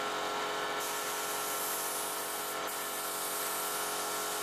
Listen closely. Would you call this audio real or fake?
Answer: real